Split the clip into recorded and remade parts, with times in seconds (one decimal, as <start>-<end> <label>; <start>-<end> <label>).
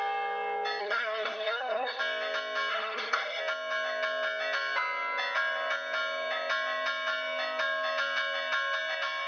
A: 0.0-0.8 recorded; 0.8-2.0 remade; 2.0-2.7 recorded; 2.7-3.4 remade; 3.4-9.3 recorded